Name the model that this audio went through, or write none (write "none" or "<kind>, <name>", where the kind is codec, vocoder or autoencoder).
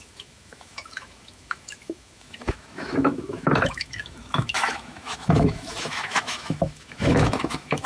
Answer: autoencoder, DAC-VAE